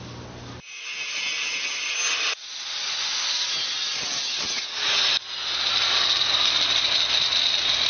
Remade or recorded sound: recorded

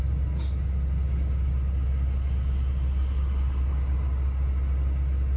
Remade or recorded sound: recorded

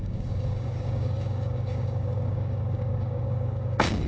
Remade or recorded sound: remade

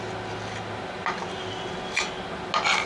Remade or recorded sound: recorded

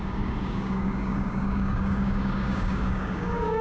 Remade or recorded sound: remade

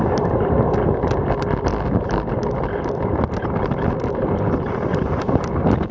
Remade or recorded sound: recorded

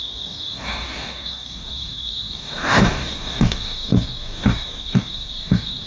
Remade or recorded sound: remade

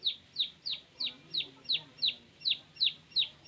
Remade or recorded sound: recorded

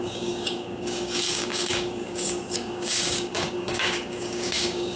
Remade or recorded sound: remade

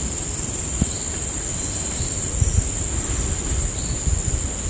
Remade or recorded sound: recorded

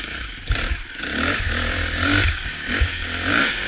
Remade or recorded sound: remade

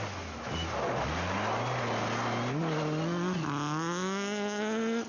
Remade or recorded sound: recorded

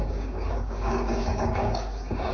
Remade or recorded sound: remade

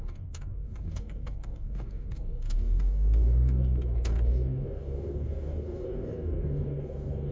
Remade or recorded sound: remade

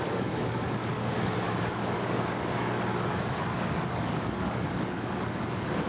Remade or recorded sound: remade